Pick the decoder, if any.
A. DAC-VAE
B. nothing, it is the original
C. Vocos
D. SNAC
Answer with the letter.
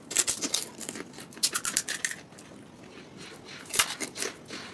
B